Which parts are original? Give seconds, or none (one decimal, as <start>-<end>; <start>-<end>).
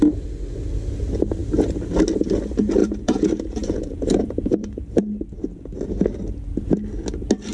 0.0-2.8; 4.9-7.5